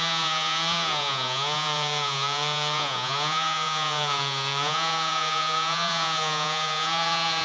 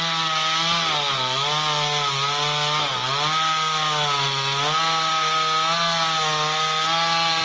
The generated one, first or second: first